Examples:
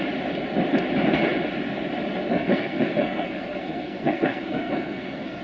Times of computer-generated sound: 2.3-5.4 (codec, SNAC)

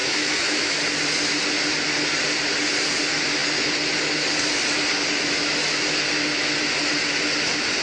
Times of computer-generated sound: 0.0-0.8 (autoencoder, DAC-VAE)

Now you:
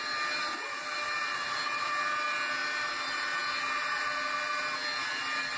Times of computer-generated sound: none